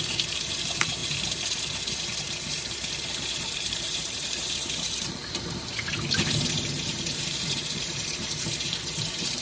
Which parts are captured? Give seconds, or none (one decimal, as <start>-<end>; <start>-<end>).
none